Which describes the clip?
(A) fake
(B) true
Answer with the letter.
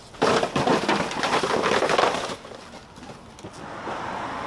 B